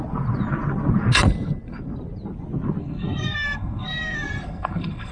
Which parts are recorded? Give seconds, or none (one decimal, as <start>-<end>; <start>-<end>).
0.0-2.8